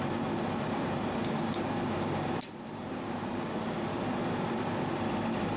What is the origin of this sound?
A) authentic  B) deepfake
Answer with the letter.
B